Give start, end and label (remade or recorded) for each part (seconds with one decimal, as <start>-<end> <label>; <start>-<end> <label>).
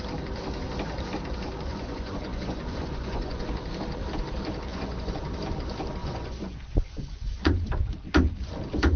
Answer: 0.0-1.7 recorded; 1.7-3.5 remade; 3.5-4.7 recorded; 4.7-5.2 remade; 5.2-6.0 recorded; 6.0-7.7 remade; 7.7-9.0 recorded